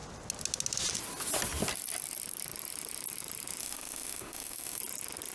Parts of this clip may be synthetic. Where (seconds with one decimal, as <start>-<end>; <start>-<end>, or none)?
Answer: 3.6-4.8